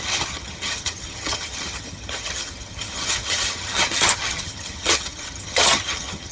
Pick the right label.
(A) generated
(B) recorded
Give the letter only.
A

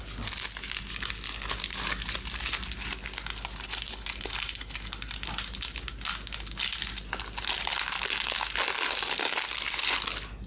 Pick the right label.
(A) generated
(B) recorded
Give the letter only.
B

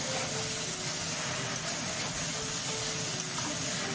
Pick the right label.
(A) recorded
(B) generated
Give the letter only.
A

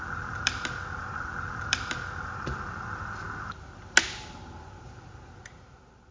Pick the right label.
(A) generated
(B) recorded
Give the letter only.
B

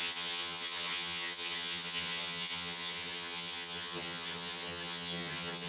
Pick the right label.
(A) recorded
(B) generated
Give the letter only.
B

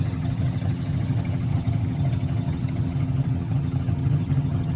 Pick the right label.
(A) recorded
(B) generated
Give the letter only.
B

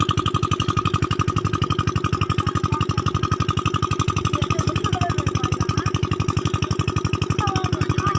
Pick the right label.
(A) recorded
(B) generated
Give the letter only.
A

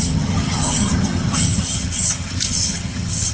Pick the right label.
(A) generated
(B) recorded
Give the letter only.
A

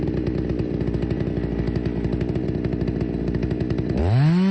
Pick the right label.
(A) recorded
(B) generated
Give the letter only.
A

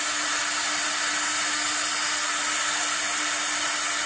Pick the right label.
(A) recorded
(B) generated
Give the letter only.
A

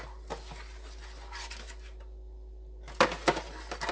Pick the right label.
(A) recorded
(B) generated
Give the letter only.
A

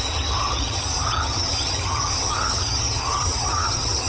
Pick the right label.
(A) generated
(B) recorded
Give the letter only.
A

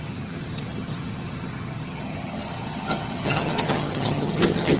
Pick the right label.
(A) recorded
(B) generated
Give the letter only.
B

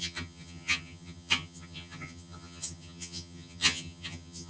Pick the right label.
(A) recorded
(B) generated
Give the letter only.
B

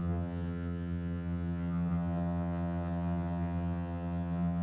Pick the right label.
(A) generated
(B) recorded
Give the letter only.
A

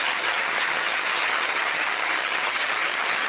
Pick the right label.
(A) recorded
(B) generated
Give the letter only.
B